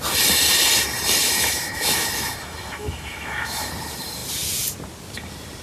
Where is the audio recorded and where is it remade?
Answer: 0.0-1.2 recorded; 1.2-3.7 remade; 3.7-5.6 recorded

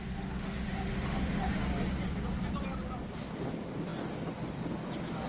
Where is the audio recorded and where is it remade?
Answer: 0.0-1.5 remade; 1.5-5.3 recorded